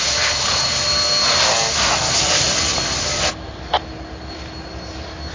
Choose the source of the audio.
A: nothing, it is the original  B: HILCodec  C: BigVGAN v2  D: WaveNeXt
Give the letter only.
A